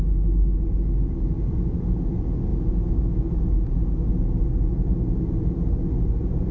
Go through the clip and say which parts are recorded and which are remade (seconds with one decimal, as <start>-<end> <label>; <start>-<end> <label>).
0.0-2.5 recorded; 2.5-3.5 remade; 3.5-6.5 recorded